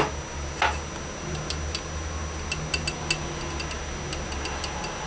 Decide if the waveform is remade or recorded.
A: recorded